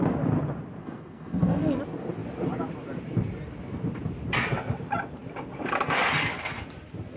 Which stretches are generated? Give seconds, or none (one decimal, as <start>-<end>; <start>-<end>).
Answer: 0.8-1.8